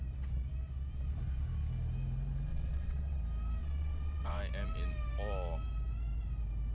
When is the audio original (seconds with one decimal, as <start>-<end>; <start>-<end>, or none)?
0.0-2.5; 3.2-3.6; 4.4-6.7